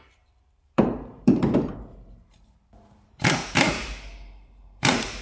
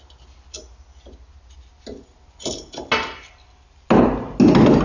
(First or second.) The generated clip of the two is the first